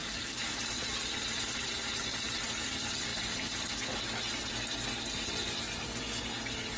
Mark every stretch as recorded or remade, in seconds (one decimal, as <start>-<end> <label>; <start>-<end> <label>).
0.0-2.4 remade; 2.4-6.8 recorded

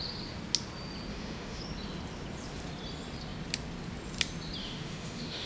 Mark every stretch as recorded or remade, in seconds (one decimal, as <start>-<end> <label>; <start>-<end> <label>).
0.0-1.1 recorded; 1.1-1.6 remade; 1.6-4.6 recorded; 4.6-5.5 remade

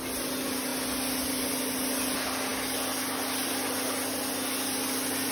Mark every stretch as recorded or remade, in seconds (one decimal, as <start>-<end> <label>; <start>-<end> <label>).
0.0-5.3 recorded

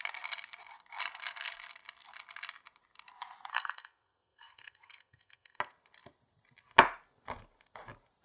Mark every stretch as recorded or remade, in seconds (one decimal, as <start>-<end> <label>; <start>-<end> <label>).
0.0-3.5 recorded; 3.5-5.6 remade; 5.6-8.2 recorded